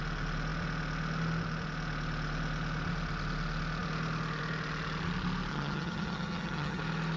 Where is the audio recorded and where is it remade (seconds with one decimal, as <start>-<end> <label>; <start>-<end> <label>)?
0.0-5.5 recorded; 5.5-6.8 remade; 6.8-7.2 recorded